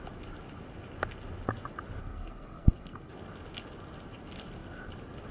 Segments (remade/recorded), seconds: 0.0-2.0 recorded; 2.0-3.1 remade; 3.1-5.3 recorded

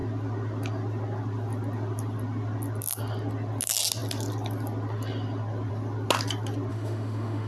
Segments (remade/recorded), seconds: 0.0-6.7 recorded; 6.7-7.5 remade

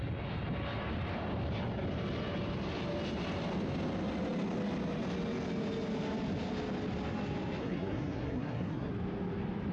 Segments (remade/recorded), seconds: 0.0-7.6 recorded; 7.6-8.9 remade; 8.9-9.7 recorded

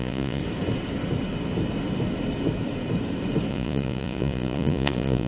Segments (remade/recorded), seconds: 0.0-0.4 remade; 0.4-3.5 recorded; 3.5-5.3 remade

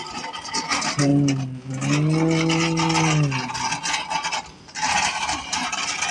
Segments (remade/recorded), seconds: 0.0-1.1 remade; 1.1-4.6 recorded; 4.6-5.6 remade; 5.6-6.1 recorded

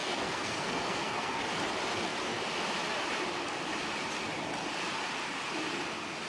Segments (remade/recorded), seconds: 0.0-1.4 remade; 1.4-6.3 recorded

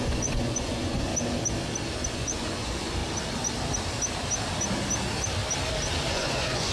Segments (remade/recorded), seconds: 0.0-1.1 remade; 1.1-2.1 recorded; 2.1-3.0 remade; 3.0-6.1 recorded; 6.1-6.7 remade

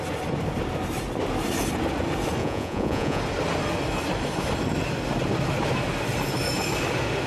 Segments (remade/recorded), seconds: 0.0-2.4 recorded; 2.4-3.2 remade; 3.2-7.3 recorded